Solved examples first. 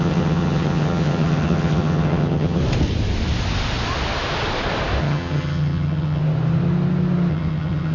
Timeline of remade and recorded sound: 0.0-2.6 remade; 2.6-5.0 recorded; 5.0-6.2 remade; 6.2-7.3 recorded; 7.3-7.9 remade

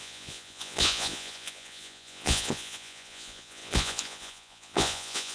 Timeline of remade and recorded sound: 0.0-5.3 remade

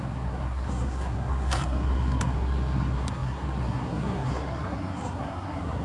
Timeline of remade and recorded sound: 0.0-5.8 remade

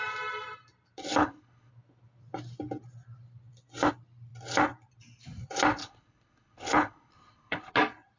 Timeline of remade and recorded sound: 0.0-1.1 recorded; 1.1-1.7 remade; 1.7-5.8 recorded; 5.8-7.7 remade; 7.7-8.2 recorded

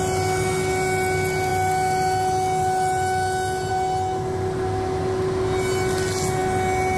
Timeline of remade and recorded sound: 0.0-7.0 recorded

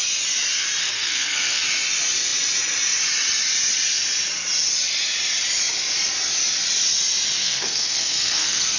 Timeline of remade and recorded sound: 0.0-0.8 recorded; 0.8-1.6 remade; 1.6-7.4 recorded; 7.4-8.8 remade

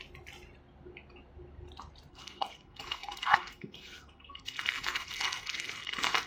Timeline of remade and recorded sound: 0.0-2.1 recorded; 2.1-6.3 remade

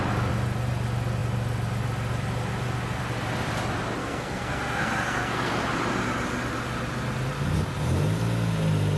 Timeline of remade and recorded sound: 0.0-4.0 recorded; 4.0-5.5 remade; 5.5-9.0 recorded